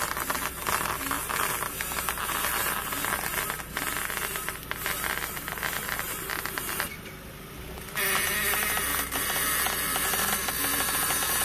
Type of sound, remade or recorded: recorded